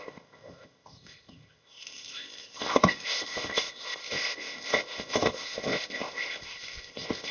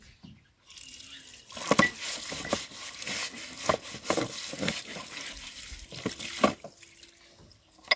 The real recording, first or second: second